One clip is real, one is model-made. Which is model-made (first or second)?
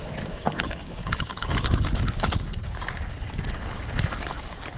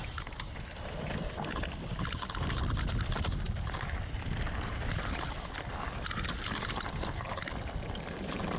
first